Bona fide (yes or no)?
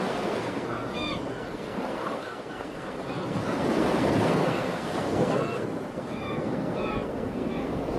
no